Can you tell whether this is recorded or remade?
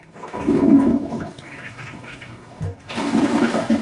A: remade